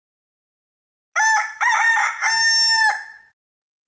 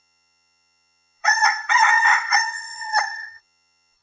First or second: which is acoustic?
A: first